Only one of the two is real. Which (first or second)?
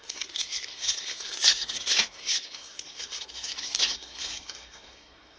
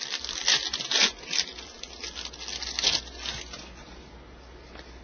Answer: second